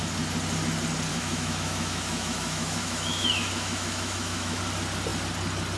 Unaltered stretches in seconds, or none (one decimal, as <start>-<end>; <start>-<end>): 0.0-1.1; 4.6-5.8